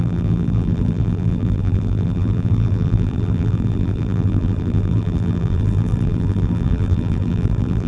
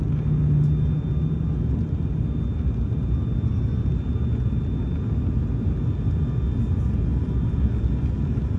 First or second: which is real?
second